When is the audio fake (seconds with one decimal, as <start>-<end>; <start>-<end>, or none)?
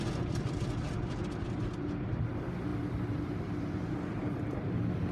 2.7-3.8